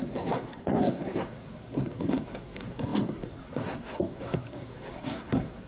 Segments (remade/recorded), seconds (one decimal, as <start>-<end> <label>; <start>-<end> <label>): 0.0-5.7 remade